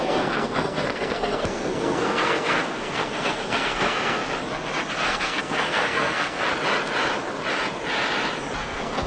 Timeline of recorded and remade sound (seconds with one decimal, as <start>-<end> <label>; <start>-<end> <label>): 0.0-4.2 remade; 4.2-4.9 recorded; 4.9-6.5 remade; 6.5-8.6 recorded; 8.6-9.1 remade